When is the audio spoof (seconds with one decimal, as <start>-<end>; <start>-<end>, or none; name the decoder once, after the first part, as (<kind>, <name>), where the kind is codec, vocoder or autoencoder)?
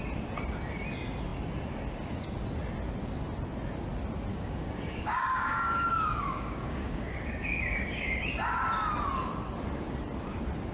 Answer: 4.3-8.3 (codec, DAC)